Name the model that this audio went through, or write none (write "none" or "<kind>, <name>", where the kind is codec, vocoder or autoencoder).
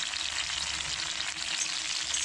none